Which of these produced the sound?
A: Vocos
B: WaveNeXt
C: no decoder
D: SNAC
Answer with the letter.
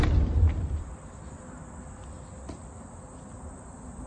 C